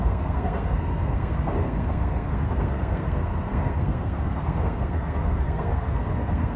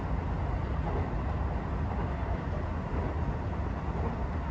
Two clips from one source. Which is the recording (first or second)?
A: second